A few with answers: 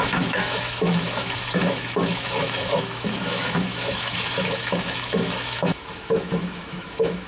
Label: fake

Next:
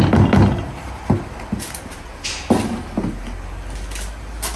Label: real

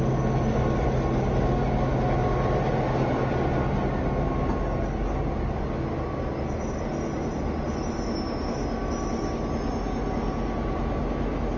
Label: real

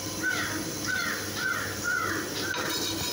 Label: real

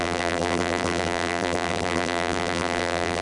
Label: fake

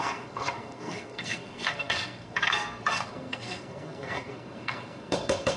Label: fake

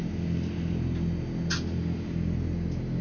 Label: real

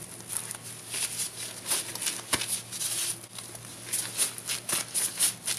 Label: real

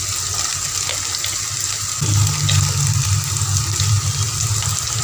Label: real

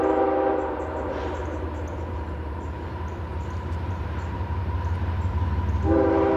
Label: fake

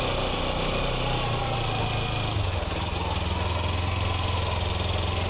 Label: real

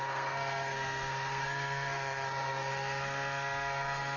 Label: fake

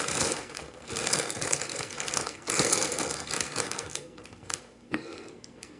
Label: fake